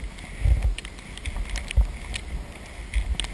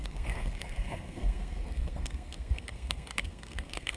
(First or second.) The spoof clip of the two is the second